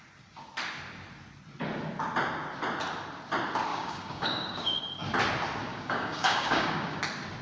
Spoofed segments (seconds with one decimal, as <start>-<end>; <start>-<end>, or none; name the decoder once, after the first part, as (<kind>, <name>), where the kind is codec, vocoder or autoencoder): 3.7-4.8 (codec, DAC); 5.7-7.0